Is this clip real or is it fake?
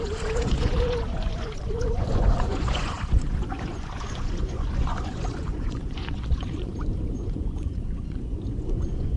fake